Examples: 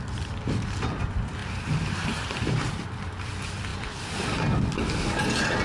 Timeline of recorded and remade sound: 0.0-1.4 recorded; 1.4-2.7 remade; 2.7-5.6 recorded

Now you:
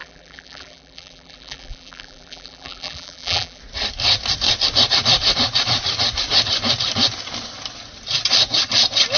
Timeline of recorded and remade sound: 0.0-3.6 remade; 3.6-9.2 recorded